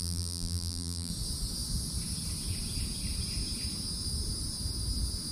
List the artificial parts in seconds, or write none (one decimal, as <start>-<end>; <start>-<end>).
0.0-1.1